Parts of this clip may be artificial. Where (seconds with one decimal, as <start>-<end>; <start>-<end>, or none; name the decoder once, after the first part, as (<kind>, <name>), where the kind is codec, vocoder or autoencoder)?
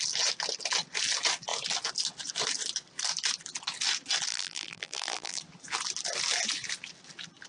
4.3-5.4 (vocoder, BigVGAN v2)